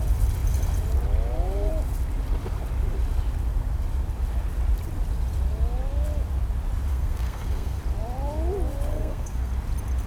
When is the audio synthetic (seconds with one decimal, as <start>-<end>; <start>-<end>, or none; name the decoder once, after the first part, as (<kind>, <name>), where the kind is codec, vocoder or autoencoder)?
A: 6.9-7.8 (codec, SNAC); 8.9-9.5